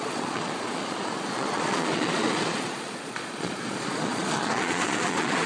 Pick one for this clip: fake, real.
fake